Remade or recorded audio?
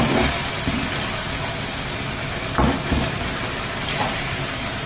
recorded